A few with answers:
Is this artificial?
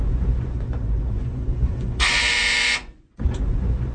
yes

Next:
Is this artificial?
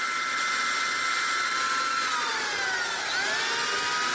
no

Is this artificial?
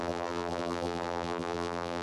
yes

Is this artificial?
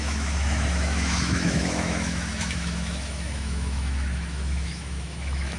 yes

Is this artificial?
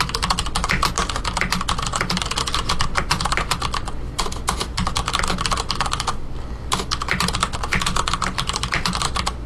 no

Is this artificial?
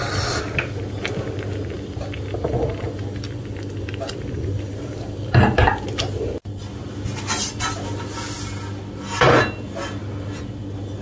no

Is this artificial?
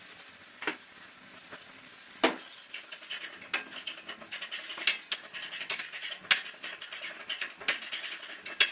no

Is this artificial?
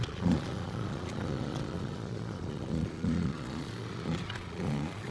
yes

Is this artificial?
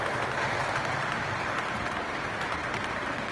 yes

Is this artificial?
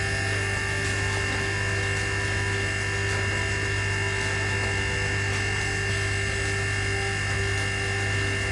no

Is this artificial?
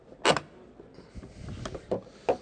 no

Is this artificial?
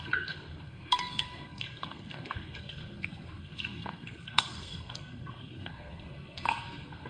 yes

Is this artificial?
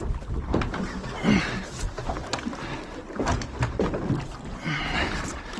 no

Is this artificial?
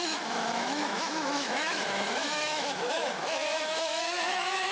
yes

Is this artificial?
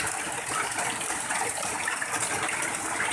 no